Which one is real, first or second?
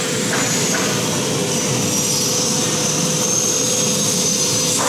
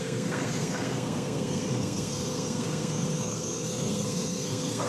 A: first